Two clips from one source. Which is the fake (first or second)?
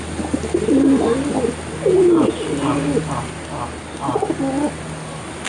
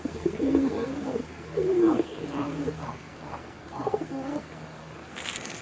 second